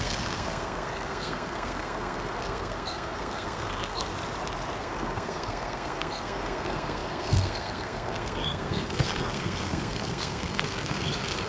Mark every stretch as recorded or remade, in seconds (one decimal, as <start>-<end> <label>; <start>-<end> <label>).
0.0-4.1 remade; 4.1-4.8 recorded; 4.8-11.5 remade